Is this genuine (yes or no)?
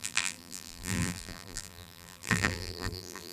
no